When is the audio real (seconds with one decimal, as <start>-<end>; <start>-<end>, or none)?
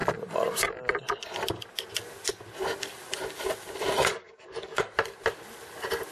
0.0-4.1; 4.8-6.1